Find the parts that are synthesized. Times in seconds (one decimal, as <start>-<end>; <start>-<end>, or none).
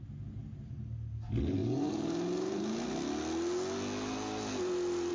none